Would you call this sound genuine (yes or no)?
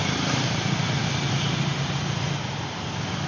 yes